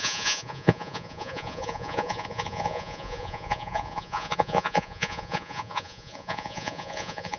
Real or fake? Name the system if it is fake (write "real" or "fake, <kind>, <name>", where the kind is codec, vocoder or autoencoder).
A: fake, vocoder, Vocos